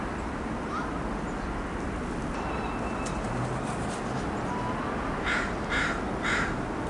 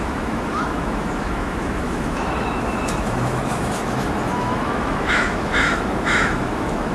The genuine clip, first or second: first